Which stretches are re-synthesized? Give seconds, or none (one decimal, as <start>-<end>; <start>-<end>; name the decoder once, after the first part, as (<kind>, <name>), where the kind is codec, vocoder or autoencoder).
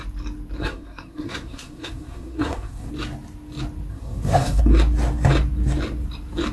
0.6-2.9 (codec, SNAC); 3.9-4.6